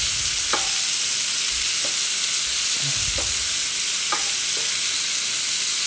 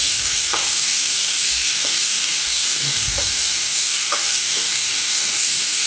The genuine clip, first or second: first